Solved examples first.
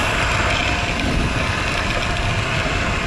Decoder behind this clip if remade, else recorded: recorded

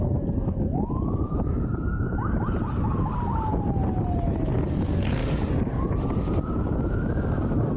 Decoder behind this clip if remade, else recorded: remade, vocoder, BigVGAN v2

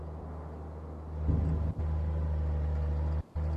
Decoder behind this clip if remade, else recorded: recorded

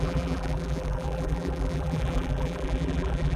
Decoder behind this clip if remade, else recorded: remade, vocoder, BigVGAN v2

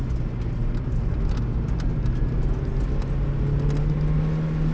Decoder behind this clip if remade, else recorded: recorded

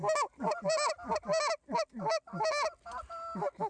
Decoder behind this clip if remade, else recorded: recorded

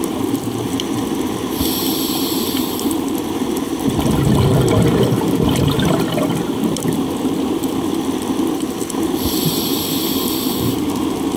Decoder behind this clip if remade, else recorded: remade, vocoder, BigVGAN v2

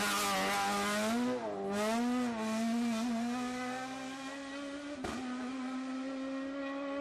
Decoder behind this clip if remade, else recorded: recorded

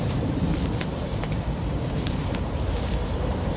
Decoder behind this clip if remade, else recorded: remade, vocoder, BigVGAN v2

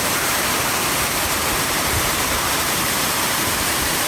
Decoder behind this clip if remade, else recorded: remade, vocoder, BigVGAN v2